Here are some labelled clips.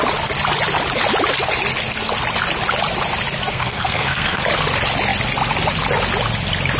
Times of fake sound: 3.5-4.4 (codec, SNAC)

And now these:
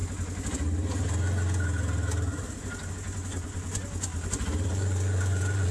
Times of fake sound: 2.9-4.1 (vocoder, Vocos); 4.7-5.7

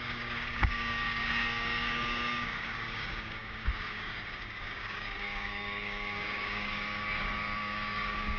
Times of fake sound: 0.0-8.4 (codec, DAC)

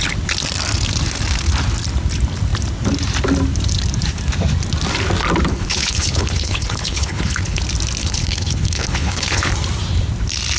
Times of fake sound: 5.5-7.6 (codec, HILCodec); 8.0-9.5

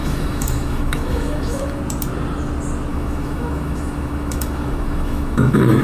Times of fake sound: 0.0-1.8 (autoencoder, DAC-VAE); 2.9-5.8

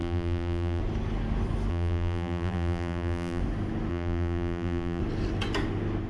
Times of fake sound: 0.0-0.8 (vocoder, BigVGAN v2); 1.7-3.4; 3.9-5.0